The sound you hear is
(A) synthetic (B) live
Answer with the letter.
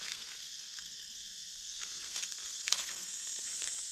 A